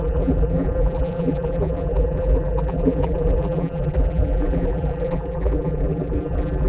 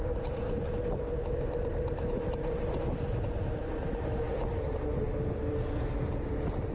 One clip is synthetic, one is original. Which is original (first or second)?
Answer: second